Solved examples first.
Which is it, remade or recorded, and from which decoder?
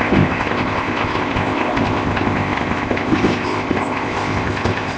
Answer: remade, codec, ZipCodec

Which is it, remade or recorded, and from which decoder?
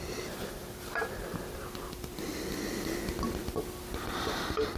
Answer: recorded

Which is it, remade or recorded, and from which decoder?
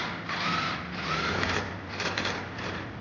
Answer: recorded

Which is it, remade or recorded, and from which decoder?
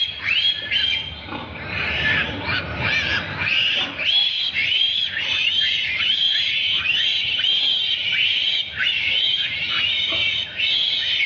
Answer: recorded